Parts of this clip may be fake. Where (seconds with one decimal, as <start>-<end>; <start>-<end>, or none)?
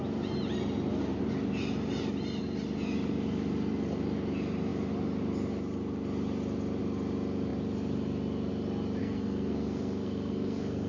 9.0-10.9